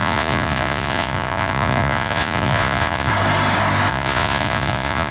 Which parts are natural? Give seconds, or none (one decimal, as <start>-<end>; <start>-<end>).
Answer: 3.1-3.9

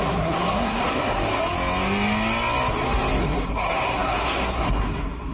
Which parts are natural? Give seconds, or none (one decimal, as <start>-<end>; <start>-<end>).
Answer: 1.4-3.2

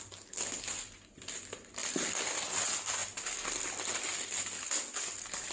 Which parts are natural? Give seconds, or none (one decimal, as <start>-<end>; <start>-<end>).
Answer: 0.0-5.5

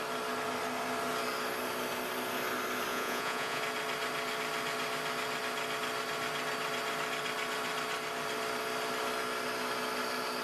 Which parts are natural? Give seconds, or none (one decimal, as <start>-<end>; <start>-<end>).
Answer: 0.0-2.9; 3.6-10.4